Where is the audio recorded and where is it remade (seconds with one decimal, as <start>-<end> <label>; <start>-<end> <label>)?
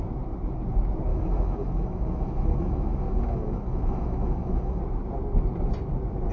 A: 0.0-1.1 recorded; 1.1-4.8 remade; 4.8-6.3 recorded